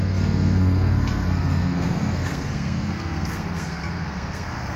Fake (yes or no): yes